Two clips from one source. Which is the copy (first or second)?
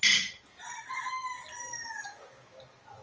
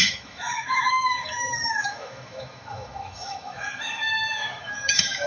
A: second